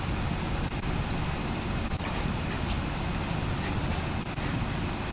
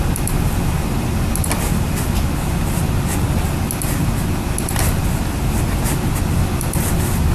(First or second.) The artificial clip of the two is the first